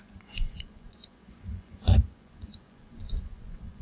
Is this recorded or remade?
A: remade